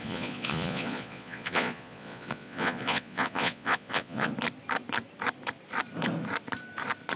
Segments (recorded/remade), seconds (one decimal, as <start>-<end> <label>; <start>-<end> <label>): 0.0-4.3 remade; 4.3-7.2 recorded